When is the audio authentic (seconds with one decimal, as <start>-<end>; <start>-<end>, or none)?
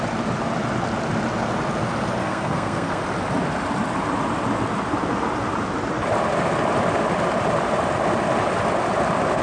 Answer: 0.0-2.2; 3.0-9.4